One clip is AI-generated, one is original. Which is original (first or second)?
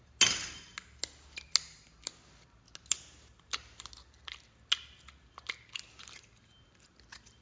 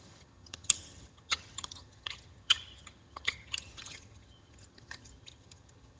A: first